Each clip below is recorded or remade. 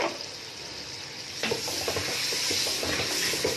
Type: recorded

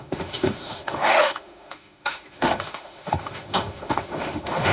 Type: remade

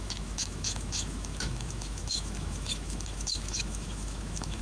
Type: remade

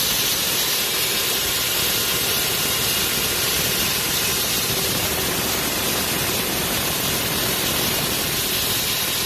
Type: recorded